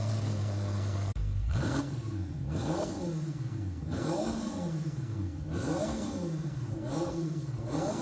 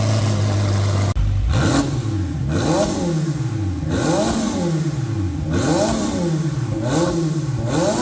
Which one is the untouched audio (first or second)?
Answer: second